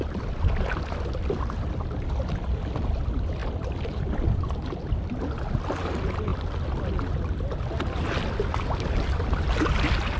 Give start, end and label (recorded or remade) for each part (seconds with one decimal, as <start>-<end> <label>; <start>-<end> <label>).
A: 0.0-10.2 recorded